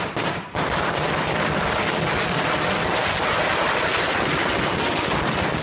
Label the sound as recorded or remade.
recorded